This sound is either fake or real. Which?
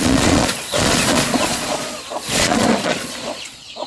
fake